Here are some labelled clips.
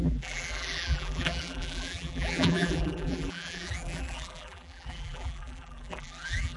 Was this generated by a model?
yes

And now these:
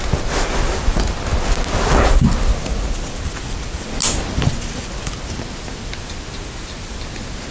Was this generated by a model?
no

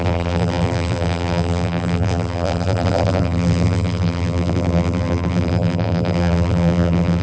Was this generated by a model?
yes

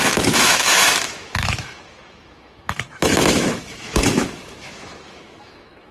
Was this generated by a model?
yes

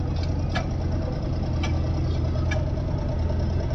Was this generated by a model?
no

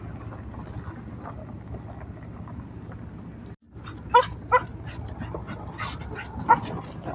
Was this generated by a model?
no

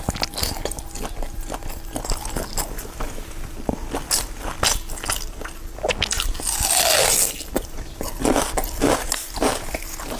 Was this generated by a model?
no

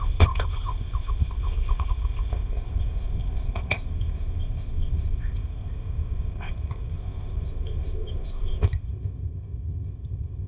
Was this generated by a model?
yes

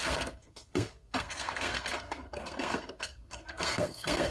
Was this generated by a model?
yes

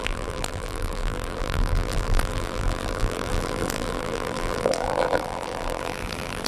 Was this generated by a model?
yes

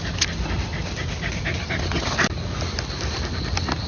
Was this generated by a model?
no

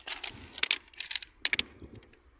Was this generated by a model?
no